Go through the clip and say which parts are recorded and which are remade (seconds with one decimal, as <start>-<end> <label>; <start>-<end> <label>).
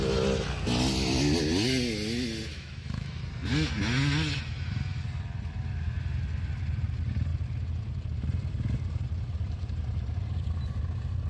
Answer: 0.0-2.5 recorded; 2.5-3.2 remade; 3.2-11.3 recorded